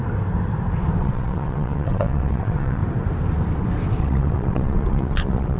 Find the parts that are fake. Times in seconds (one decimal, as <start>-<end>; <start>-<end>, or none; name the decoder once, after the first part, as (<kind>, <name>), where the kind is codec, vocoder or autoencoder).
1.0-2.8 (vocoder, WaveNeXt); 4.0-5.6